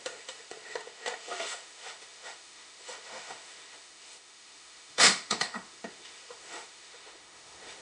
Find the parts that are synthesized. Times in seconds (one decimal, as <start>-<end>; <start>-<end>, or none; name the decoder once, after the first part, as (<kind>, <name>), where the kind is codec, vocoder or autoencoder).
0.0-7.8 (autoencoder, DAC-VAE)